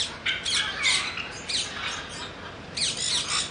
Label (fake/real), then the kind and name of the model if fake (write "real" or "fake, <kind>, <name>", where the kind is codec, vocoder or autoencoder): real